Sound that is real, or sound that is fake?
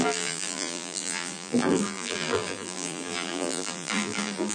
fake